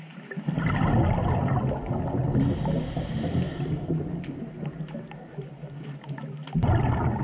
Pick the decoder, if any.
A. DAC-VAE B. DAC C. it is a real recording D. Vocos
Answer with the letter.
C